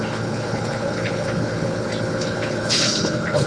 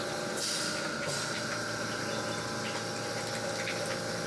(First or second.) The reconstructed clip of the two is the first